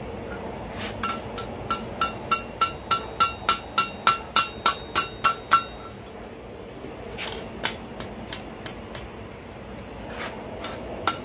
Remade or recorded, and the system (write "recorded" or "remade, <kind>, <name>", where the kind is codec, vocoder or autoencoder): recorded